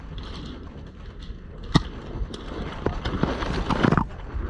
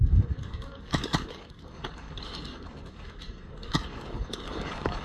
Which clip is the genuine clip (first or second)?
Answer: first